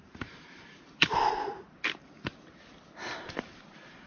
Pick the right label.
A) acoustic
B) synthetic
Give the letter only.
B